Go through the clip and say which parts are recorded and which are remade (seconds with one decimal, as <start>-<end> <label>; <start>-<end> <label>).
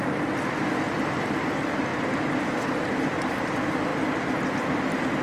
0.0-5.2 recorded